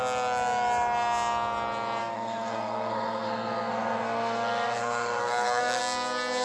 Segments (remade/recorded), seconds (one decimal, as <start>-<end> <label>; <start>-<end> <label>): 0.0-2.0 recorded; 2.0-5.8 remade; 5.8-6.4 recorded